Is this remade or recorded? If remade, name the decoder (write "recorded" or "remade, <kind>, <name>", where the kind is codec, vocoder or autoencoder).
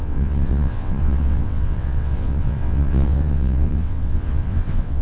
remade, vocoder, WaveNeXt